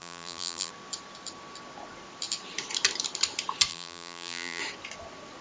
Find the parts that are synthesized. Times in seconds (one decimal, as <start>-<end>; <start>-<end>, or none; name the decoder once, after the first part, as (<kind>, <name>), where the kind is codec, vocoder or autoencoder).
0.0-0.7 (vocoder, BigVGAN v2); 3.7-4.6